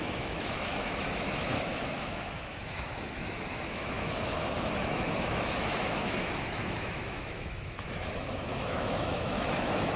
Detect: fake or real fake